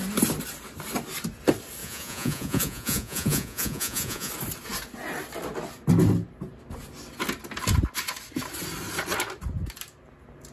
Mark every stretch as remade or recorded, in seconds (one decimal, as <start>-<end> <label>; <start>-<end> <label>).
0.0-1.8 recorded; 1.8-4.3 remade; 4.3-10.5 recorded